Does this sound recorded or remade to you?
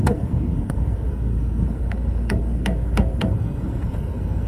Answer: remade